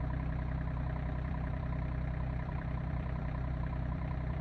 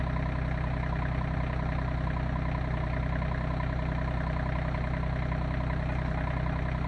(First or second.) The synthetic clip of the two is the first